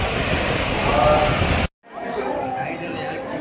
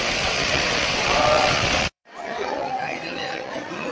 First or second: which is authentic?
first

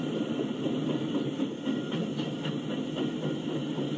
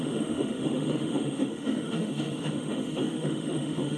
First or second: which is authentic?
first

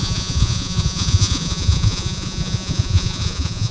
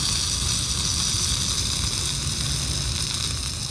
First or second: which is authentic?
second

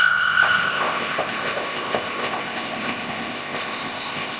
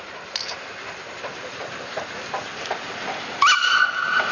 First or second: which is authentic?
second